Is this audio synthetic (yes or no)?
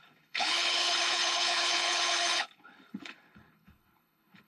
yes